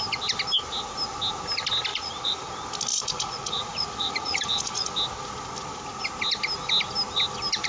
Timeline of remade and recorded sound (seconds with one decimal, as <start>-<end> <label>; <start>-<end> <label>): 0.0-1.9 recorded; 1.9-2.5 remade; 2.5-2.9 recorded; 2.9-4.9 remade; 4.9-7.7 recorded